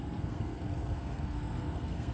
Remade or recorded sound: remade